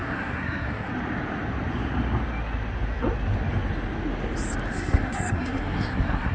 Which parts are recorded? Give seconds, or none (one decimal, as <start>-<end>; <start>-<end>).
0.9-4.7

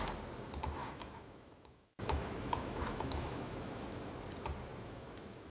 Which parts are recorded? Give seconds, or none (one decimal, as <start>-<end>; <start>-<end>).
0.0-0.8; 4.1-4.7

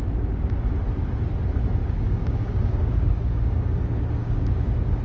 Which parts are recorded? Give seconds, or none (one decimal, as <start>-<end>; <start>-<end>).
0.0-1.8; 3.8-4.2

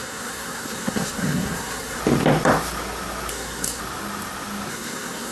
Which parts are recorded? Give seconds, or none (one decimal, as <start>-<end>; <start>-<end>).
2.0-3.3; 3.8-4.7